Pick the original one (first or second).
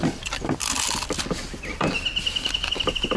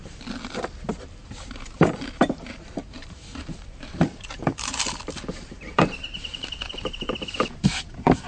first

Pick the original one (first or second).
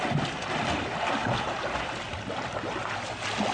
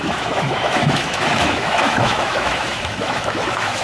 first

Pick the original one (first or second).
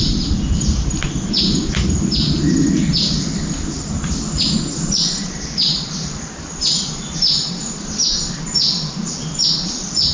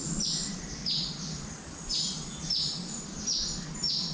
second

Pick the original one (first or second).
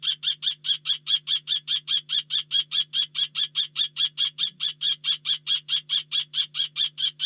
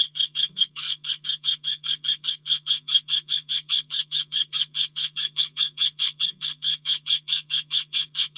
first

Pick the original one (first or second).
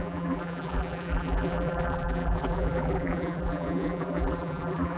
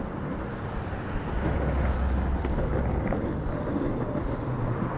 second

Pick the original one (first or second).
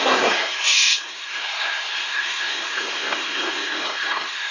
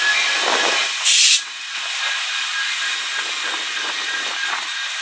second